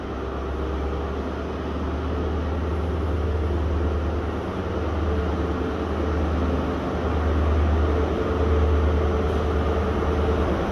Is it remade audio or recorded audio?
recorded